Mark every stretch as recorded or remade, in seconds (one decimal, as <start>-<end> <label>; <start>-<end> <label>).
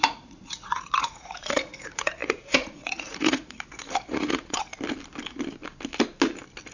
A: 0.0-4.7 remade; 4.7-6.7 recorded